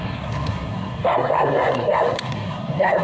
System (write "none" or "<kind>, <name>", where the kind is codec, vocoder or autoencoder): codec, SNAC